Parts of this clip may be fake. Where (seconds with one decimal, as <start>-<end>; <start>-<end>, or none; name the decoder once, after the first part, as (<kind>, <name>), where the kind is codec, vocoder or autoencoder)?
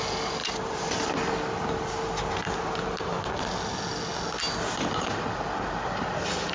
0.4-1.3 (vocoder, BigVGAN v2)